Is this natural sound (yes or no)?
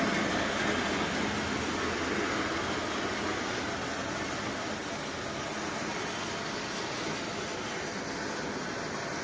yes